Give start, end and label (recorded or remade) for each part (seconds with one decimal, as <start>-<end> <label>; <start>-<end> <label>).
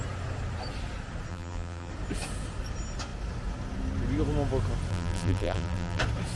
0.0-1.3 recorded; 1.3-1.9 remade; 1.9-4.9 recorded; 4.9-6.0 remade; 6.0-6.4 recorded